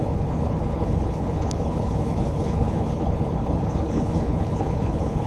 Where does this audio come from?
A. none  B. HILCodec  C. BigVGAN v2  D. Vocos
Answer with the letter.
B